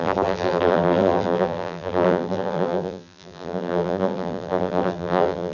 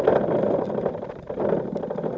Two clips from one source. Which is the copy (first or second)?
first